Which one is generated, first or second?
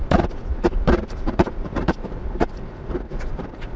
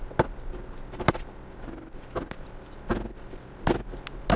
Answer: first